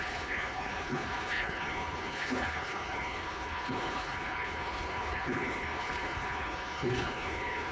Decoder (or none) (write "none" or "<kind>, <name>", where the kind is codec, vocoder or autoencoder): codec, HILCodec